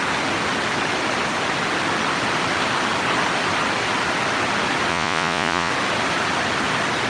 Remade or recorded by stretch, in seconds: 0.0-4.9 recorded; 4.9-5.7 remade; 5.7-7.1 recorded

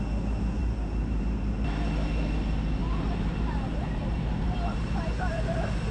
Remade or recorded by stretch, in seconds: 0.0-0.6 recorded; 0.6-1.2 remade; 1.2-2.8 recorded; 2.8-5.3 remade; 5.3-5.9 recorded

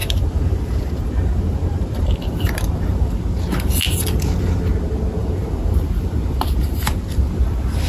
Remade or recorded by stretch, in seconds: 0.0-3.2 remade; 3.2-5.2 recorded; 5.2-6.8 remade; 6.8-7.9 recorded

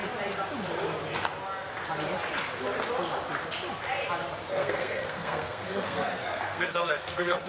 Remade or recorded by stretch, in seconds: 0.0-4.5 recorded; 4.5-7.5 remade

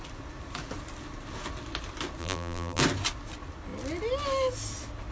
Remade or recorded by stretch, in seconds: 0.0-2.2 recorded; 2.2-2.8 remade; 2.8-5.1 recorded